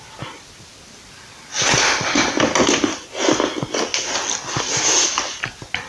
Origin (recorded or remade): recorded